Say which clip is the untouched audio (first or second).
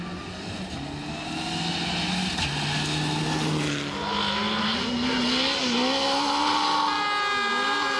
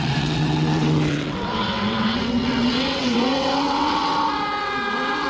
first